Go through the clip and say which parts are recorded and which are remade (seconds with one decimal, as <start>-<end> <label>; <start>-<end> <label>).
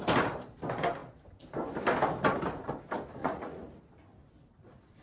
0.0-3.2 recorded; 3.2-3.9 remade; 3.9-5.0 recorded